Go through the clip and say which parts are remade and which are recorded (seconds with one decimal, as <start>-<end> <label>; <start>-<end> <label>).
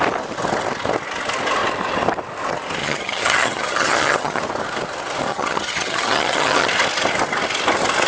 0.0-2.8 recorded; 2.8-4.4 remade; 4.4-5.3 recorded; 5.3-6.7 remade; 6.7-8.1 recorded